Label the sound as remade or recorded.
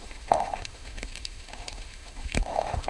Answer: remade